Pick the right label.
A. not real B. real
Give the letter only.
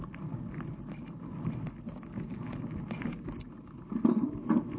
B